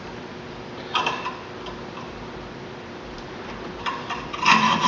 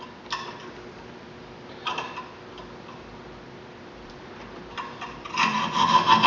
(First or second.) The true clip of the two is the second